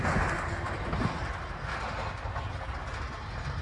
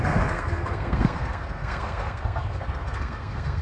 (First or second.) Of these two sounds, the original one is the first